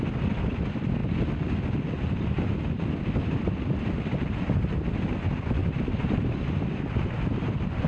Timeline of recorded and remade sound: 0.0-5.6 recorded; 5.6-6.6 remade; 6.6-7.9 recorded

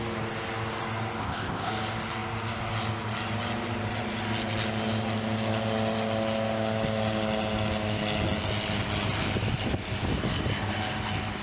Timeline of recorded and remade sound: 0.0-1.2 recorded; 1.2-1.7 remade; 1.7-11.4 recorded

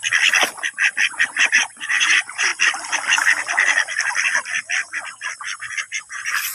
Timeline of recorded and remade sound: 0.0-1.5 recorded; 1.5-2.5 remade; 2.5-5.8 recorded; 5.8-6.5 remade

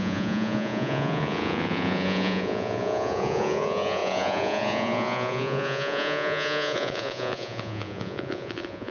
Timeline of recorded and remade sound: 0.0-8.9 remade

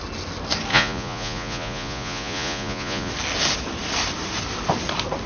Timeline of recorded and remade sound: 0.0-0.7 recorded; 0.7-3.1 remade; 3.1-5.3 recorded

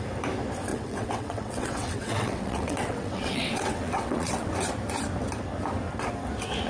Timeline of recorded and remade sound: 0.0-0.7 recorded; 0.7-4.5 remade; 4.5-6.7 recorded

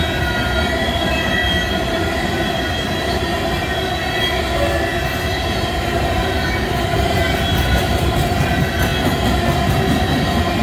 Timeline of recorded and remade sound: 0.0-10.6 recorded

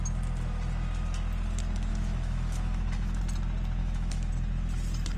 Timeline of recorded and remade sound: 0.0-1.9 recorded; 1.9-3.2 remade; 3.2-3.8 recorded; 3.8-4.3 remade; 4.3-5.2 recorded